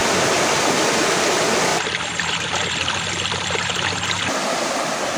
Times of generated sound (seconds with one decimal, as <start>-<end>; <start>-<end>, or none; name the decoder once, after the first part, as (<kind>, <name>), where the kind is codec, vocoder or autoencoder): none